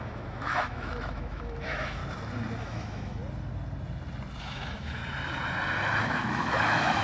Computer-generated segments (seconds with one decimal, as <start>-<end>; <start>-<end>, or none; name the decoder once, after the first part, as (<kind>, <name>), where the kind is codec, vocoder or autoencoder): 0.0-2.0 (autoencoder, DAC-VAE); 2.6-3.2; 4.4-5.0; 6.0-7.0